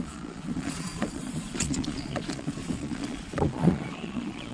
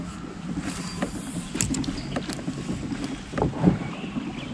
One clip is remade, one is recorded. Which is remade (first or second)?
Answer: first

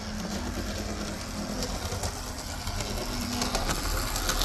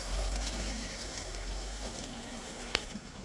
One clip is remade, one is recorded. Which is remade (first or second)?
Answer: second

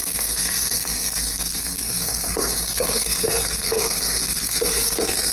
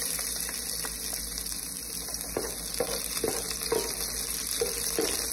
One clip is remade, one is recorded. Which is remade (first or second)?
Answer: first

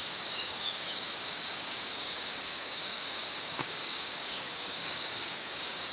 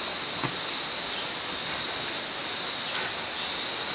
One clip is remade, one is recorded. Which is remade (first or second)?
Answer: first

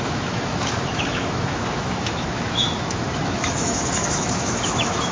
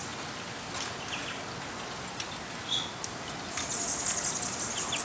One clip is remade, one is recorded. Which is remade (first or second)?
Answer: first